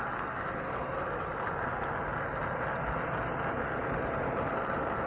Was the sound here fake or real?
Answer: real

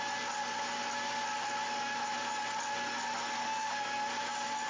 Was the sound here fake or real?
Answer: real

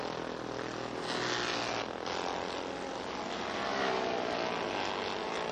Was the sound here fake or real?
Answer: real